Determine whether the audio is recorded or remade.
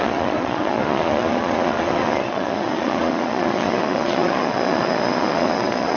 remade